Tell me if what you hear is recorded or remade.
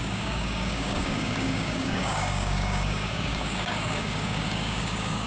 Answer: remade